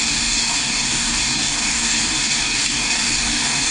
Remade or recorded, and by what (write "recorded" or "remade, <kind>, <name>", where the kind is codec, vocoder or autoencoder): remade, codec, DAC